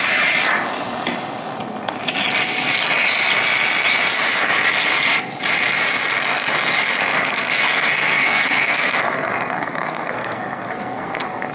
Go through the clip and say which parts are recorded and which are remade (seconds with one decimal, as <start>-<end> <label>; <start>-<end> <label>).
0.0-7.0 recorded; 7.0-11.5 remade

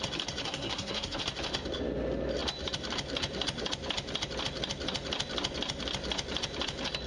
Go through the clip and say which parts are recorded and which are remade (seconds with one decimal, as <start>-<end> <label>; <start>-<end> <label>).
0.0-0.4 recorded; 0.4-1.2 remade; 1.2-7.1 recorded

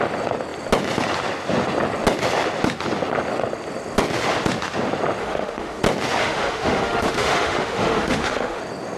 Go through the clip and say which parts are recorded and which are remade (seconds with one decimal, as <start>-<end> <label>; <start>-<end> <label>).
0.0-5.2 recorded; 5.2-5.8 remade; 5.8-6.2 recorded; 6.2-8.6 remade; 8.6-9.0 recorded

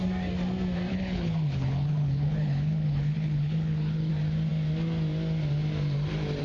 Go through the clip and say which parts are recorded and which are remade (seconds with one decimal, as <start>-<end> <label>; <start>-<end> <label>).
0.0-0.9 recorded; 0.9-4.1 remade; 4.1-6.4 recorded